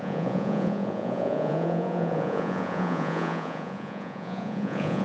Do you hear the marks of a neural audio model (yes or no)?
yes